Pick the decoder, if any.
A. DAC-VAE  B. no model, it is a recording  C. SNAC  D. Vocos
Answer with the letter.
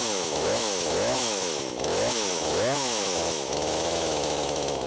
A